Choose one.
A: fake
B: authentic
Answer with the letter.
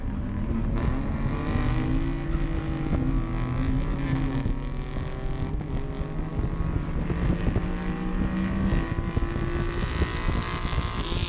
B